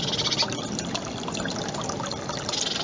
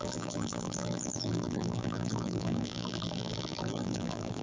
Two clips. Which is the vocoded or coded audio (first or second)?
second